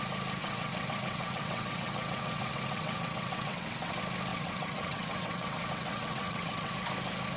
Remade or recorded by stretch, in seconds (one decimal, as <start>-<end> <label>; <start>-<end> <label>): 0.0-0.4 recorded; 0.4-3.9 remade; 3.9-4.3 recorded; 4.3-6.7 remade; 6.7-7.4 recorded